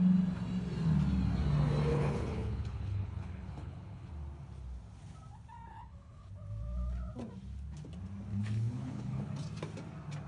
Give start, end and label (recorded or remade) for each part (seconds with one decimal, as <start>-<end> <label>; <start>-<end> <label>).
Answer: 0.0-1.9 recorded; 1.9-4.1 remade; 4.1-5.7 recorded; 5.7-6.3 remade; 6.3-8.3 recorded; 8.3-9.3 remade; 9.3-10.3 recorded